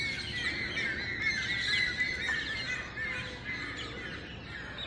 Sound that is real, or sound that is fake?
real